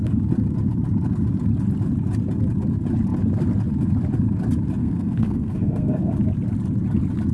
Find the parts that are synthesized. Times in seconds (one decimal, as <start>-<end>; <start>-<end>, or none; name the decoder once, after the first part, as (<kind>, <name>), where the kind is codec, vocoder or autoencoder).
4.8-6.1 (codec, SNAC)